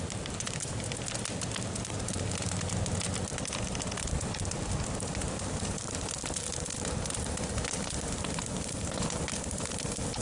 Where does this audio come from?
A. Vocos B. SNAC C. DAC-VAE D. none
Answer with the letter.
D